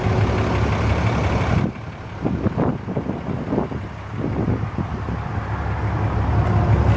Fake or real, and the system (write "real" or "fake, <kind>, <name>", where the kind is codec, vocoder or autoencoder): real